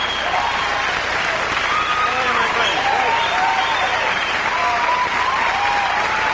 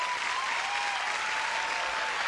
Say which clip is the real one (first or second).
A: second